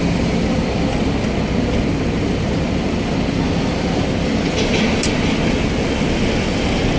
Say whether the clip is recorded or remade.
recorded